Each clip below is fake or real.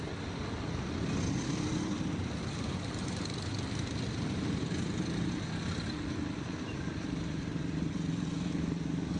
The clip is real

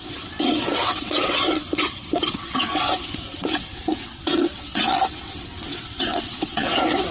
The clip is fake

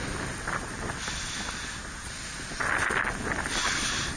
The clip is real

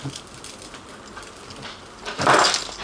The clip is real